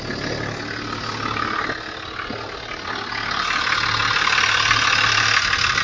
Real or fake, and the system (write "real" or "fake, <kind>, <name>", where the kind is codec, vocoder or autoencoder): real